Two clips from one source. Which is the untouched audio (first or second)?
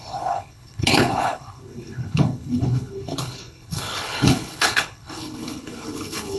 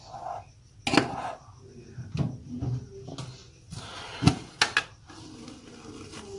second